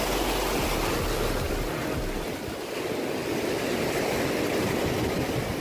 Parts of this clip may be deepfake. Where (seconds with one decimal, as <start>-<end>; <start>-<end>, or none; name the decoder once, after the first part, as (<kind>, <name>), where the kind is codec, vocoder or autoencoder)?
none